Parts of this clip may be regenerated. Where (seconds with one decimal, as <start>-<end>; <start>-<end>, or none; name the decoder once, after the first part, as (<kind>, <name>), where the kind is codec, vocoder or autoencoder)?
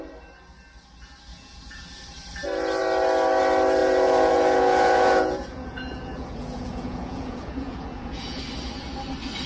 1.3-1.8 (vocoder, Vocos); 3.8-8.4